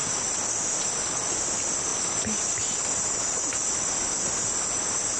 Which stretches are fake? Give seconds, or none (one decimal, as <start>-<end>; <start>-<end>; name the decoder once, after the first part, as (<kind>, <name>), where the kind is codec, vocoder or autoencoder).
none